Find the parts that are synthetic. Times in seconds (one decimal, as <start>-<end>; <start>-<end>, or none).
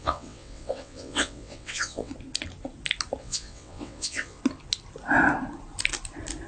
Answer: 0.0-2.1; 3.2-4.4